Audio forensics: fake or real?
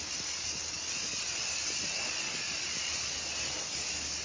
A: real